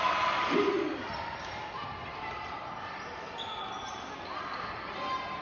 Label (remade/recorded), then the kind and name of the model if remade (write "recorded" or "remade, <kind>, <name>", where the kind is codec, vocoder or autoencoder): recorded